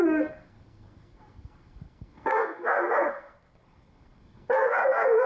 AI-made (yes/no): yes